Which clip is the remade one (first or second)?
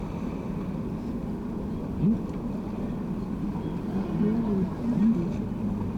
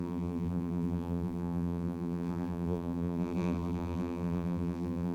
second